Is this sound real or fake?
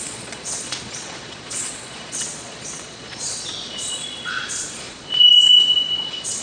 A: fake